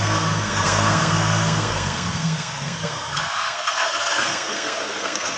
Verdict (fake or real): fake